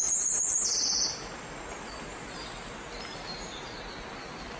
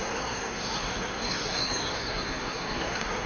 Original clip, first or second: first